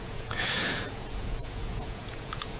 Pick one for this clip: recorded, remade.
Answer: remade